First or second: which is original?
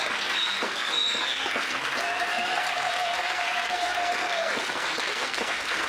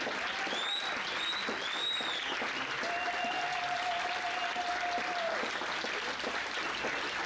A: second